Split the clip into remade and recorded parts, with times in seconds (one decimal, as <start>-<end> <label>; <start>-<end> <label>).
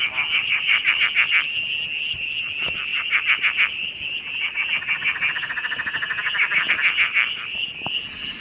0.0-0.4 recorded; 0.4-1.0 remade; 1.0-8.4 recorded